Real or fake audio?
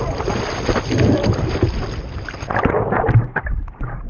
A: real